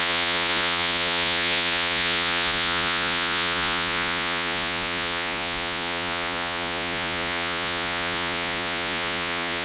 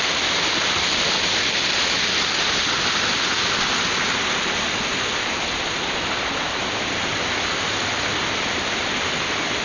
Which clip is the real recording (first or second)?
second